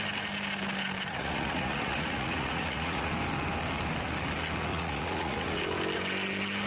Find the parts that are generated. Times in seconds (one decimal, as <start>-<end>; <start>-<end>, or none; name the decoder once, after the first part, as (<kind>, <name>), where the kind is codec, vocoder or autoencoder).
1.1-3.1 (vocoder, Vocos); 4.7-5.6